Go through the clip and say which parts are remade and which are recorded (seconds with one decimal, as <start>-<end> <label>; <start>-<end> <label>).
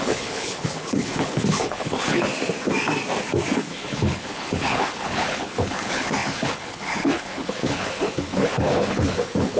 0.0-2.3 remade; 2.3-3.7 recorded; 3.7-9.6 remade